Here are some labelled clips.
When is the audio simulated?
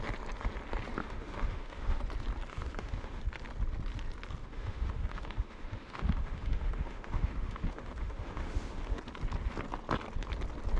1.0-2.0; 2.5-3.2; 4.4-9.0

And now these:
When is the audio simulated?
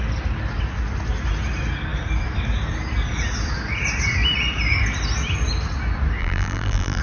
6.2-7.0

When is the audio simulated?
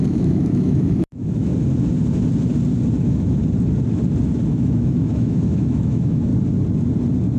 0.0-1.5; 3.0-3.4; 4.5-6.3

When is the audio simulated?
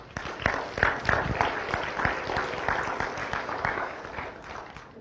3.2-4.0